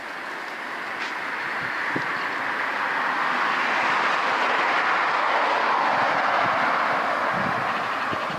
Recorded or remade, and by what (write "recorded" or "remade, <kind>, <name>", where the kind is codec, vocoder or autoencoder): recorded